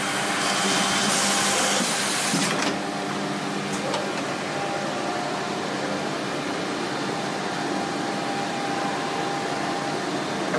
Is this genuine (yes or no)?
yes